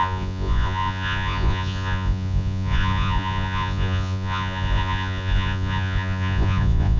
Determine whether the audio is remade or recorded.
remade